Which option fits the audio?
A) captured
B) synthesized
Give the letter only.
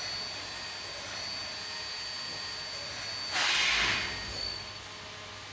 A